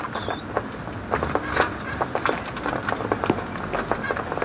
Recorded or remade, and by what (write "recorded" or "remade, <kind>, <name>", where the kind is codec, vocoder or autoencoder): recorded